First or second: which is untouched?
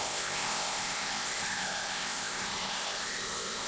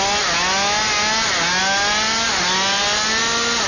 second